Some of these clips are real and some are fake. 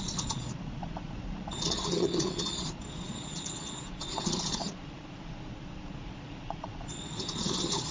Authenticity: fake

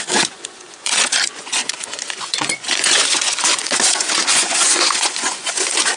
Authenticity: fake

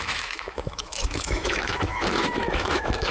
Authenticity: fake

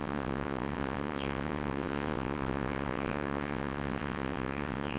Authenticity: fake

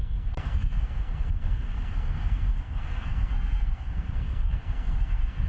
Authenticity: fake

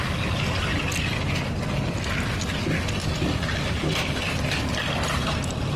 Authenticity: real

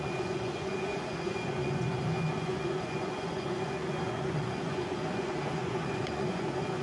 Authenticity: fake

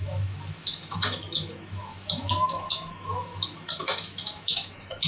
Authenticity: fake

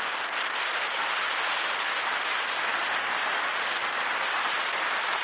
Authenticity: real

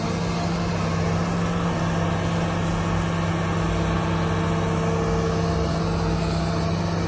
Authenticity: real